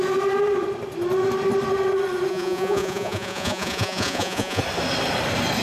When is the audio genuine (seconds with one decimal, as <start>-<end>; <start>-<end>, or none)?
0.0-2.3; 4.6-5.6